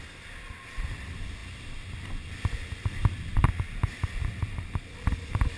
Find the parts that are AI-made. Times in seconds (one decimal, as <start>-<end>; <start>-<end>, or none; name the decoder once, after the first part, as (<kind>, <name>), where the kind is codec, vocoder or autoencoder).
none